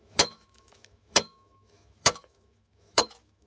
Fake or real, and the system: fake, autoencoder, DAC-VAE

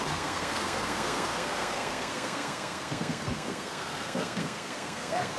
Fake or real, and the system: fake, codec, SNAC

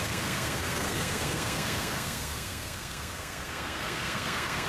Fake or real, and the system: fake, codec, SNAC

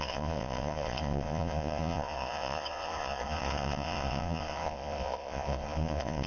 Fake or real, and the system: fake, vocoder, Vocos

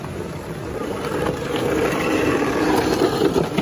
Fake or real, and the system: fake, vocoder, BigVGAN v2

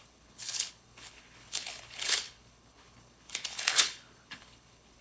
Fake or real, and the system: fake, codec, HILCodec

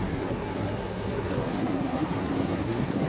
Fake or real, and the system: fake, codec, SNAC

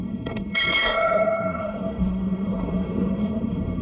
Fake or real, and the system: fake, codec, SNAC